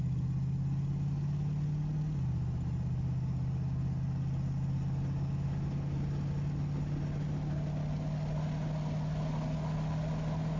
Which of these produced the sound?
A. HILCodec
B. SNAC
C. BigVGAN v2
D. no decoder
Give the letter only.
D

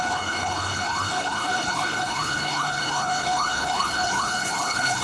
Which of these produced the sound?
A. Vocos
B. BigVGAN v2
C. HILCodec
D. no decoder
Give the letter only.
C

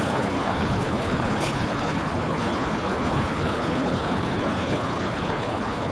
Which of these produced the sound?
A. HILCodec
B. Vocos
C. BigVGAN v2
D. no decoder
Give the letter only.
A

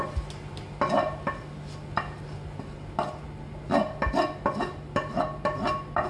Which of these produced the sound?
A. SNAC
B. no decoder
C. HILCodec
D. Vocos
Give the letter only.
B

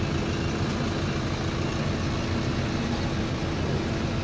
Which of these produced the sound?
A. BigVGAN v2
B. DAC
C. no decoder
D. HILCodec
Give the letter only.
C